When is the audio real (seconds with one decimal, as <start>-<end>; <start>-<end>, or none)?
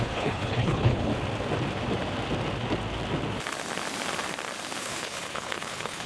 1.1-4.8